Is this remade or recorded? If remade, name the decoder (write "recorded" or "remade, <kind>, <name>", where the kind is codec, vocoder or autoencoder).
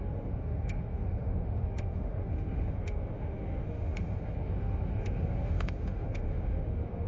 remade, autoencoder, DAC-VAE